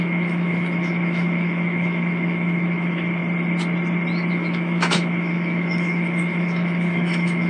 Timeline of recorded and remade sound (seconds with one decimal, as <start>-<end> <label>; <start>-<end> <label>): 0.0-3.2 remade; 3.2-4.3 recorded; 4.3-7.5 remade